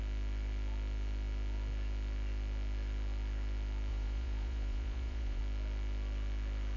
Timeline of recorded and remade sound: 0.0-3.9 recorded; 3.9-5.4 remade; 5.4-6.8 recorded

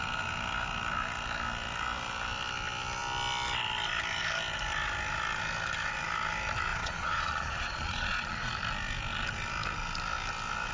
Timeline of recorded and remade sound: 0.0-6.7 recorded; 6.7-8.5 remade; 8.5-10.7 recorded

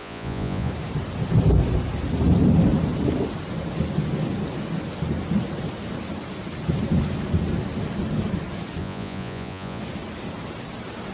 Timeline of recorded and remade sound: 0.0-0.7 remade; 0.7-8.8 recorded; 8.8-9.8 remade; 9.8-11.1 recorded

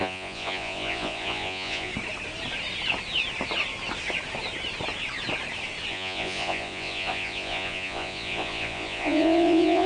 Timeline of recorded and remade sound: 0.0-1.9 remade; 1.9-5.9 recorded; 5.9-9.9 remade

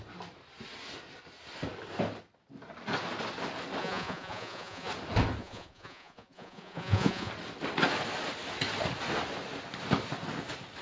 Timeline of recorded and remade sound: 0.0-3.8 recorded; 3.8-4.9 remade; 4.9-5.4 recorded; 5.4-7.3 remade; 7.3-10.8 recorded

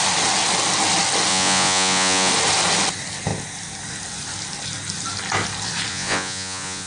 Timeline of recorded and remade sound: 0.0-1.3 recorded; 1.3-2.3 remade; 2.3-5.9 recorded; 5.9-6.9 remade

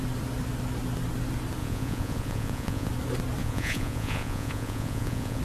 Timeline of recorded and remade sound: 0.0-1.6 recorded; 1.6-2.9 remade; 2.9-3.4 recorded; 3.4-5.4 remade